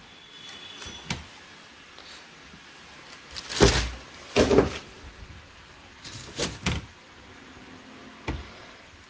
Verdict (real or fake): real